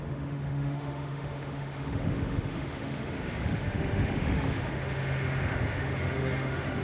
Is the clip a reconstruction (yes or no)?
yes